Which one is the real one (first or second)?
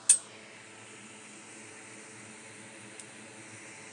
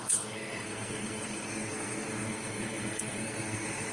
first